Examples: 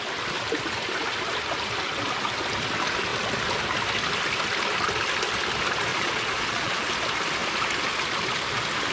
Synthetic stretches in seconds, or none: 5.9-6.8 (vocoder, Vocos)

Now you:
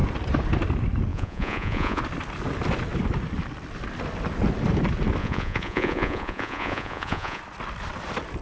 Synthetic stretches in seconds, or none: 1.1-2.0 (vocoder, Vocos); 5.2-7.4

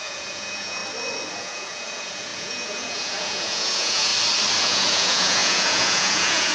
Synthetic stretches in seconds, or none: 0.0-0.8 (vocoder, Vocos); 1.3-4.1; 4.6-6.5

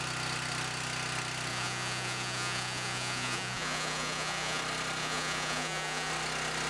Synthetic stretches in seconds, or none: 1.5-4.6 (vocoder, Vocos); 5.0-6.1

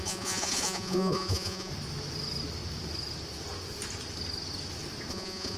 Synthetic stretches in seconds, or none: 0.0-1.7 (vocoder, Vocos); 5.1-5.6

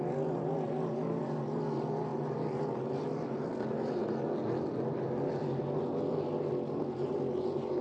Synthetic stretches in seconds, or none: none

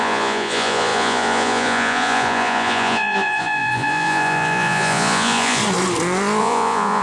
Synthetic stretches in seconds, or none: 0.0-5.6 (vocoder, Vocos); 6.4-7.0